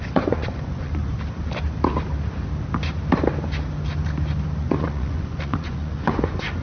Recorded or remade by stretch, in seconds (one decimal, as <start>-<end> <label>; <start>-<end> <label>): 0.0-1.0 remade; 1.0-4.6 recorded; 4.6-6.6 remade